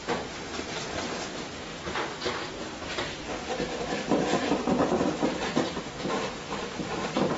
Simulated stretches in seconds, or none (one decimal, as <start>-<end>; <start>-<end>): 0.0-1.7; 2.5-7.4